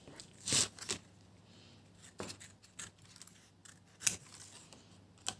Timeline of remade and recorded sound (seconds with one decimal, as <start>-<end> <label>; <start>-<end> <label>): 0.0-5.4 recorded